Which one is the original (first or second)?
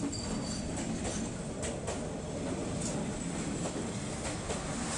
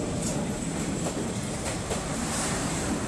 first